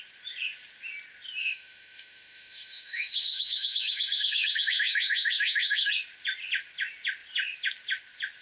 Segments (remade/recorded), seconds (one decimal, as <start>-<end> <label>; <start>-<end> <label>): 0.0-1.4 recorded; 1.4-5.9 remade; 5.9-8.4 recorded